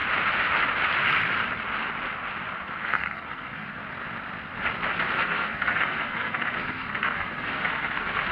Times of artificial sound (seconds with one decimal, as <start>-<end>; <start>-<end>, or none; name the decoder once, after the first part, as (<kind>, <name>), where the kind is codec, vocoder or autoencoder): 2.8-3.8 (codec, SNAC); 5.2-8.3